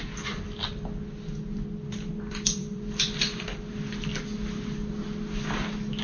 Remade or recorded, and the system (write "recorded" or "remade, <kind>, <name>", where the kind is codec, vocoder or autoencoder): recorded